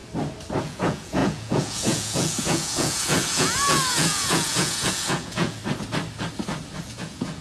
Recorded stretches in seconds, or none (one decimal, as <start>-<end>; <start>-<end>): 0.0-0.6; 5.6-6.8